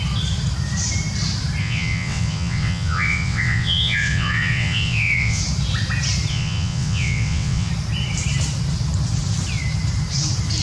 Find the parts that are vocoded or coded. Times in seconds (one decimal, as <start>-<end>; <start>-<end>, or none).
1.6-5.4; 6.3-7.7